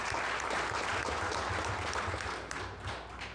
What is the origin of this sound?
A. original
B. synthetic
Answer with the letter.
A